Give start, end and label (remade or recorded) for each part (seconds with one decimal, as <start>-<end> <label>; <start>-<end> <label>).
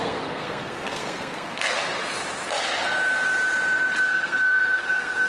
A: 0.0-1.9 remade; 1.9-4.0 recorded; 4.0-5.3 remade